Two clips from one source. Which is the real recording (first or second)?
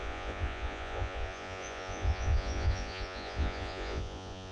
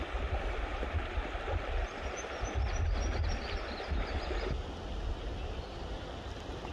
second